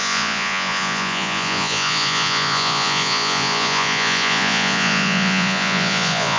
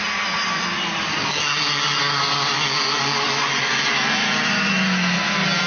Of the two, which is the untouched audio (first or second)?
second